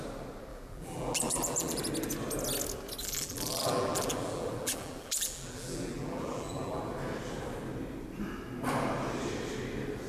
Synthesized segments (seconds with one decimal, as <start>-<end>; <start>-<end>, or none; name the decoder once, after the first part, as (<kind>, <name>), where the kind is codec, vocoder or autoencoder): 0.5-1.8 (vocoder, BigVGAN v2); 3.0-6.8